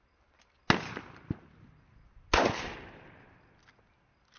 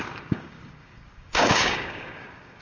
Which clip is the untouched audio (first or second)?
first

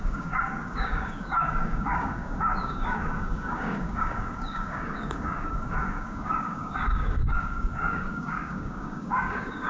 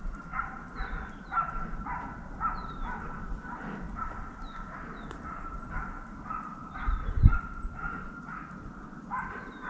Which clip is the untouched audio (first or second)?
second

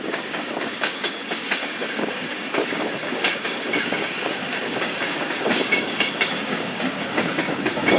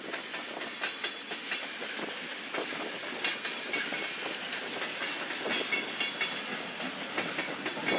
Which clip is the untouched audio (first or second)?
second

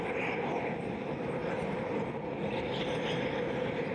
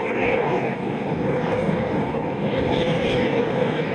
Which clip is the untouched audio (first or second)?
first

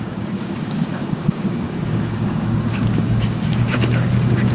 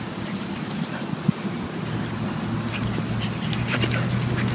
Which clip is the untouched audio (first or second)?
second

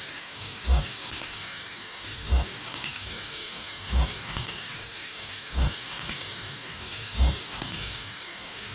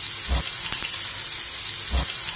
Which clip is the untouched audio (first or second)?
second